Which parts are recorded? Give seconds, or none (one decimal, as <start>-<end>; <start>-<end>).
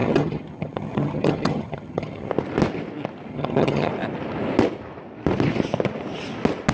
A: 2.3-3.3; 3.9-6.7